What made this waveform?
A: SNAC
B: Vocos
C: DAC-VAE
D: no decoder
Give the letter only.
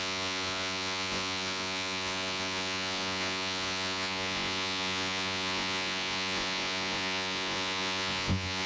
B